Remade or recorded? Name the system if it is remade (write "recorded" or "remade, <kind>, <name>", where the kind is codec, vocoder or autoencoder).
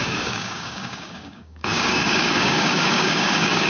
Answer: remade, codec, DAC